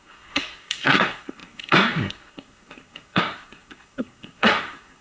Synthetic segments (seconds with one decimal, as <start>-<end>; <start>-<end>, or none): 0.0-5.0